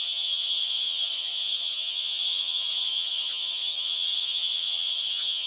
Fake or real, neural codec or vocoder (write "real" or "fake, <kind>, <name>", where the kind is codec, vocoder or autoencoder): fake, vocoder, HiFi-GAN